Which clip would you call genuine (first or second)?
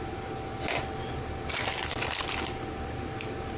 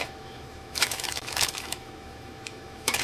first